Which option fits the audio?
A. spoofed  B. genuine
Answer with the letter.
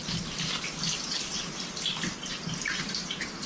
B